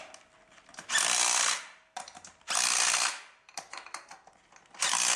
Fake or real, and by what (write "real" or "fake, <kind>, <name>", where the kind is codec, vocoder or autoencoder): real